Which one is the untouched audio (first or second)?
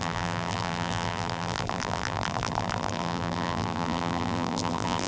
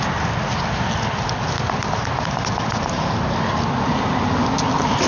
second